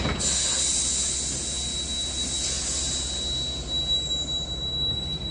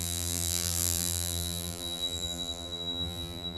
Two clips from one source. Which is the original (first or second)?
first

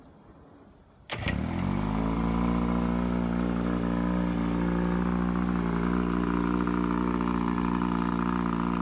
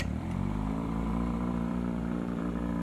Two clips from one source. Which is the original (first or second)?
first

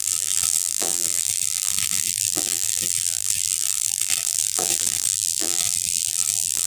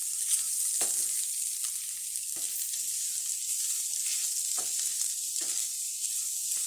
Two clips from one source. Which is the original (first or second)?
second